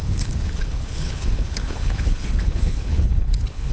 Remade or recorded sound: remade